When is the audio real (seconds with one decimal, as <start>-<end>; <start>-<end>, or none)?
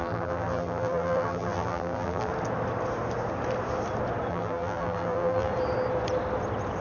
2.3-4.3; 5.5-6.8